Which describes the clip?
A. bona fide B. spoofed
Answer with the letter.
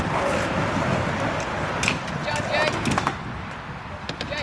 A